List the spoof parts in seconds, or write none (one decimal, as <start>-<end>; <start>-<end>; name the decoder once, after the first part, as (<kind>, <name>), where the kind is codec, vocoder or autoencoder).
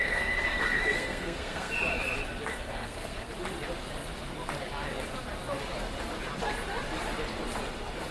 0.0-1.7 (codec, SNAC); 2.5-3.3